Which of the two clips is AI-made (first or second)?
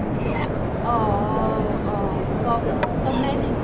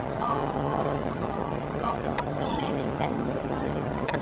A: second